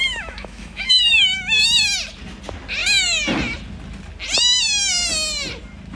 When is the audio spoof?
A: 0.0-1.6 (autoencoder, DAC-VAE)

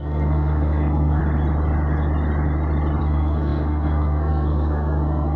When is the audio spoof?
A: 0.0-1.2 (codec, SNAC); 3.0-5.4

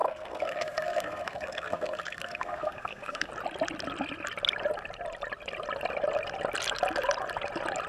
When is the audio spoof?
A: 0.0-3.3 (codec, SNAC)

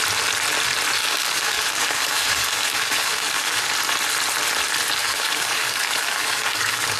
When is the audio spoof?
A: 1.0-3.6 (codec, DAC); 5.0-7.0

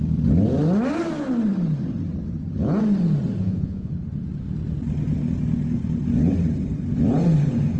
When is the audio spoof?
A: 3.4-3.9 (vocoder, Vocos)

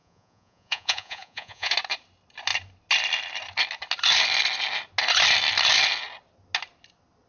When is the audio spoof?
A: 0.0-1.7 (vocoder, Vocos)